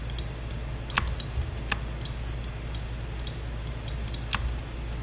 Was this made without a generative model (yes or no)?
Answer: yes